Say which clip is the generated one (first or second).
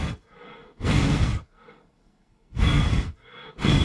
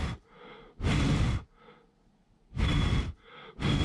first